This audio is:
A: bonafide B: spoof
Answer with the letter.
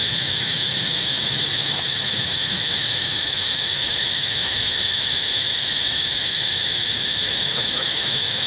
B